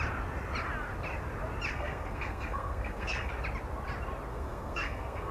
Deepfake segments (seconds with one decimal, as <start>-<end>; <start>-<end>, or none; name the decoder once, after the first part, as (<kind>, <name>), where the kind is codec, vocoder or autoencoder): 1.7-3.3 (codec, SNAC); 4.3-5.3